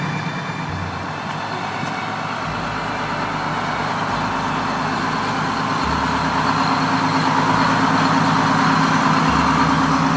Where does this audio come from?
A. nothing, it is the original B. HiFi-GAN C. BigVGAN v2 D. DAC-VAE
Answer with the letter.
A